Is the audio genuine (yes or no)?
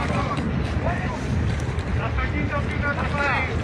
yes